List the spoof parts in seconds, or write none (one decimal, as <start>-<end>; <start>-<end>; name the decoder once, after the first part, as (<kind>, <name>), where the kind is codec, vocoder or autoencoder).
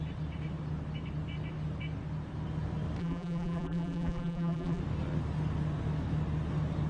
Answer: 3.0-4.8 (vocoder, BigVGAN v2)